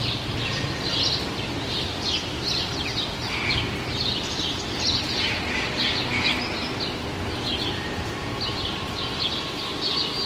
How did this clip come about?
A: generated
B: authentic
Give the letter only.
B